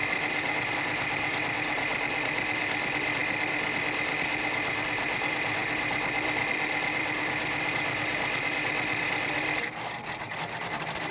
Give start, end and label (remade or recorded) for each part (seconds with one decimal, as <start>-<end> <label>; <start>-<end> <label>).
0.0-11.1 recorded